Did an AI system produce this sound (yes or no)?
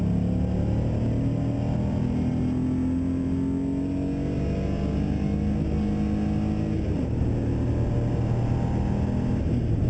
no